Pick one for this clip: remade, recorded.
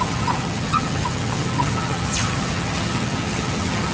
remade